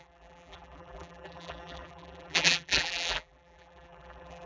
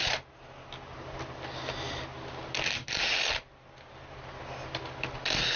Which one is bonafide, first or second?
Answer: second